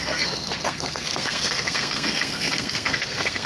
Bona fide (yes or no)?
no